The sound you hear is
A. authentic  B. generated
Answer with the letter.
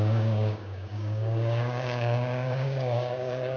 B